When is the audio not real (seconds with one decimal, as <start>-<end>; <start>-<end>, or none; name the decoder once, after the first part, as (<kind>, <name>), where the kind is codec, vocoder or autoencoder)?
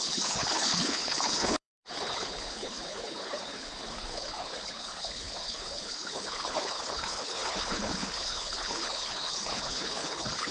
0.0-10.5 (codec, HILCodec)